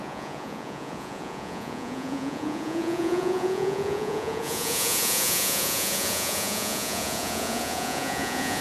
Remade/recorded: remade